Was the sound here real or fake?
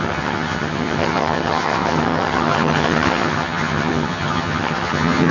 fake